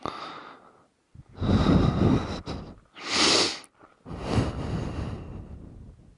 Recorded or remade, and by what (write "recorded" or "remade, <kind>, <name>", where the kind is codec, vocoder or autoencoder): recorded